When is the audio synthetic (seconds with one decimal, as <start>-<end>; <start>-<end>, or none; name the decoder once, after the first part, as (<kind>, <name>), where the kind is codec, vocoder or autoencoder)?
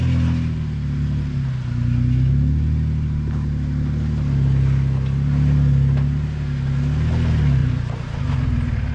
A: 7.6-8.9 (vocoder, BigVGAN v2)